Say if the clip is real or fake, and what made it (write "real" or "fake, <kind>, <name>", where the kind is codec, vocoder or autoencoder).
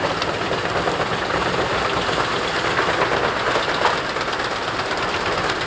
fake, vocoder, BigVGAN v2